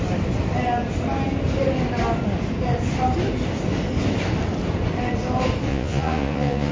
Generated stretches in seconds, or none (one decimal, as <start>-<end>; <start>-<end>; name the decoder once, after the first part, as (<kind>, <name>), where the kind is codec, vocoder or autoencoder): 5.7-6.7 (vocoder, Vocos)